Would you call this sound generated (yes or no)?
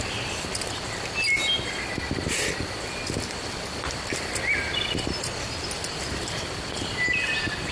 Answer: no